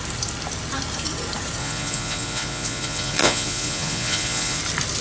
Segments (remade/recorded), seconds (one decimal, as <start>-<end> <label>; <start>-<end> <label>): 0.0-1.6 recorded; 1.6-4.6 remade; 4.6-5.0 recorded